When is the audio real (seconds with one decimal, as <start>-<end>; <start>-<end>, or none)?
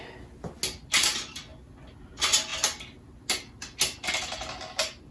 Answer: 0.0-5.1